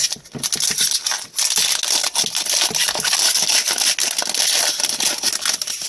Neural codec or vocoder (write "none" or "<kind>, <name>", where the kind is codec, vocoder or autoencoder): none